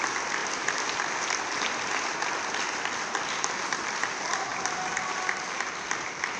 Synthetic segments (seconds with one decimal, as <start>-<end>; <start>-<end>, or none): none